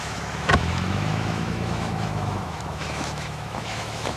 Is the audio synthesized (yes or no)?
yes